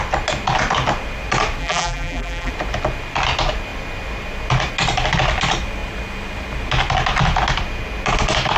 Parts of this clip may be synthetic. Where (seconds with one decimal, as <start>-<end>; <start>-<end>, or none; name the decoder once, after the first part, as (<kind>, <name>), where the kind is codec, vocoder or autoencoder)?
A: 1.6-2.5 (vocoder, BigVGAN v2)